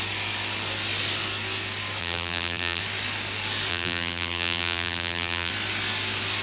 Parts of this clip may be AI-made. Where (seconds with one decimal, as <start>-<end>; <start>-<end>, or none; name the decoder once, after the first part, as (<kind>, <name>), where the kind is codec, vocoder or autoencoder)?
2.0-2.8 (vocoder, BigVGAN v2); 3.7-5.5